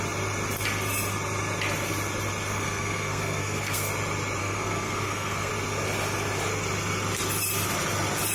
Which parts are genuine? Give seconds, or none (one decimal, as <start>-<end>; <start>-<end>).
0.0-2.5; 3.9-4.4; 5.5-8.3